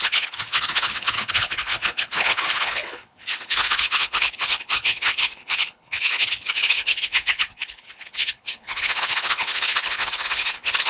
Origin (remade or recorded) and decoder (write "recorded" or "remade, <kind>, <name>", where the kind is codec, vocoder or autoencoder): remade, codec, HILCodec